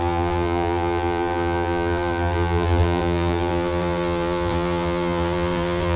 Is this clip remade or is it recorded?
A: remade